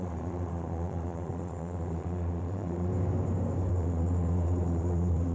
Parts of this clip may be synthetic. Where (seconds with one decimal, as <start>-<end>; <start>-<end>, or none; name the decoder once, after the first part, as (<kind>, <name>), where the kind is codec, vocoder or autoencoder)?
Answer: 0.0-2.9 (vocoder, Vocos); 3.7-5.3